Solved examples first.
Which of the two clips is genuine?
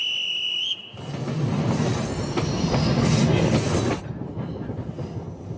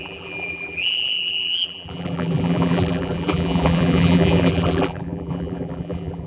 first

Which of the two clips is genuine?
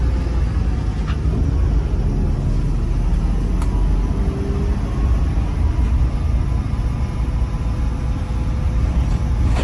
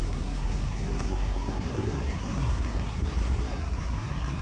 first